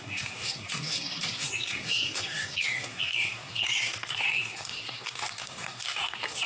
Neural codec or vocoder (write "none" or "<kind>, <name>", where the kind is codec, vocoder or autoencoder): codec, SNAC